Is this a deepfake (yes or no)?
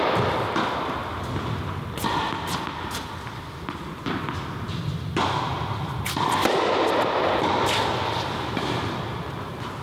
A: no